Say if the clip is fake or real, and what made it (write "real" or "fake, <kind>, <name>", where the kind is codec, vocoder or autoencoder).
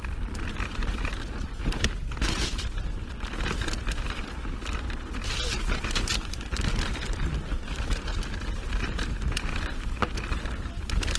real